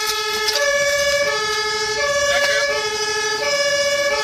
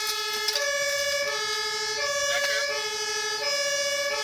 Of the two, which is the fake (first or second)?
first